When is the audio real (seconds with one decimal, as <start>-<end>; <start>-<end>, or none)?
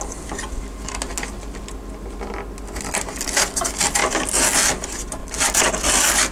0.0-5.2; 5.7-6.3